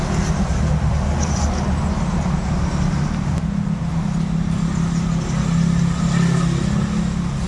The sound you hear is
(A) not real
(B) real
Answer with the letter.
B